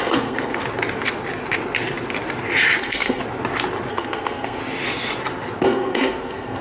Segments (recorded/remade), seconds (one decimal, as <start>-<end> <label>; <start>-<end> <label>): 0.0-0.6 remade; 0.6-2.8 recorded; 2.8-3.2 remade; 3.2-3.9 recorded; 3.9-4.6 remade; 4.6-5.6 recorded; 5.6-6.6 remade